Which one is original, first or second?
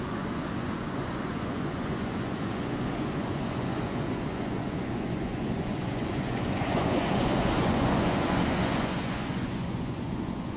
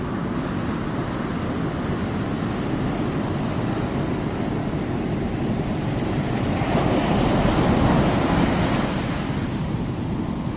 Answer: second